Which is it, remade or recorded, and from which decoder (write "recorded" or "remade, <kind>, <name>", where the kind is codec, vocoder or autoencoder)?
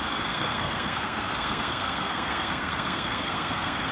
remade, codec, SNAC